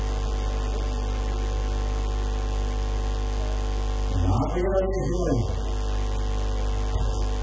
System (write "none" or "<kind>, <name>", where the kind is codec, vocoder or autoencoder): none